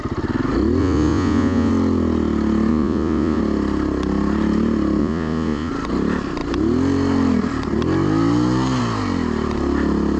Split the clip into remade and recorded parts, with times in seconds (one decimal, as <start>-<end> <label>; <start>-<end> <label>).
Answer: 0.0-0.8 recorded; 0.8-1.7 remade; 1.7-2.7 recorded; 2.7-3.4 remade; 3.4-5.0 recorded; 5.0-5.7 remade; 5.7-10.2 recorded